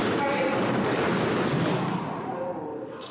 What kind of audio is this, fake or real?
real